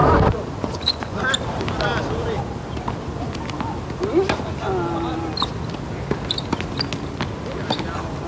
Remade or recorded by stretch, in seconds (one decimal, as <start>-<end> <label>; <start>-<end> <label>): 0.0-1.2 remade; 1.2-8.3 recorded